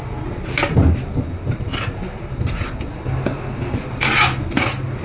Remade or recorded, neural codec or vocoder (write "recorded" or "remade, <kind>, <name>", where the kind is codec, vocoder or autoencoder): recorded